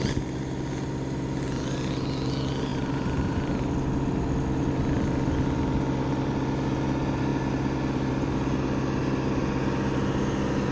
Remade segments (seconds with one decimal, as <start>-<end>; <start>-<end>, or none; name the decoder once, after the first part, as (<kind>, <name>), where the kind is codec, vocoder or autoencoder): 2.7-3.7 (vocoder, BigVGAN v2)